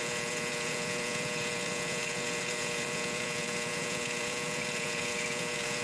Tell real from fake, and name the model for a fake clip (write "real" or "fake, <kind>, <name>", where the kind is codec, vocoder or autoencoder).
fake, vocoder, Vocos